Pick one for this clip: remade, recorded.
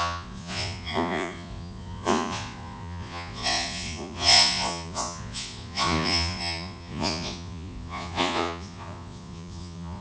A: remade